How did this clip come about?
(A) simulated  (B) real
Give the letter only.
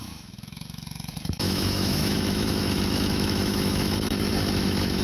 A